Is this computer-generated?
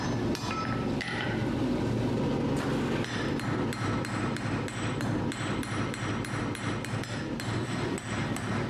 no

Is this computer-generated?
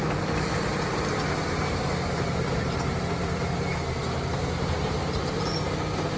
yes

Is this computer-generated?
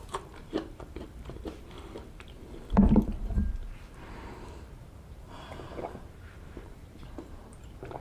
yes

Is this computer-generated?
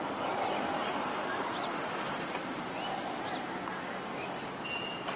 no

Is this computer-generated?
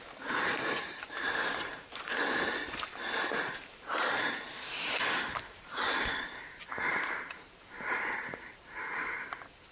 yes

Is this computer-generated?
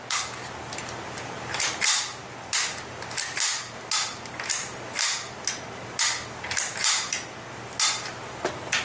no